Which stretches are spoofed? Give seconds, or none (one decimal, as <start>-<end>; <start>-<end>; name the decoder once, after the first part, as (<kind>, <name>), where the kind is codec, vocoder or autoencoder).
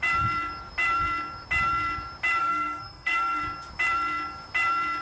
2.4-3.4 (codec, SNAC)